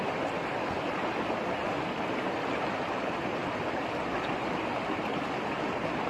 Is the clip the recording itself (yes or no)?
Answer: yes